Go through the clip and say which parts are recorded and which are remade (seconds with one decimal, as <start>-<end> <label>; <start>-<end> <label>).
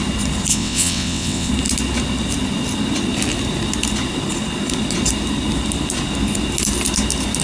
0.0-0.5 recorded; 0.5-1.5 remade; 1.5-7.4 recorded